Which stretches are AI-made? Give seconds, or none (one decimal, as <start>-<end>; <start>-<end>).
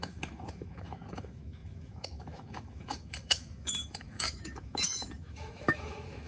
0.0-6.3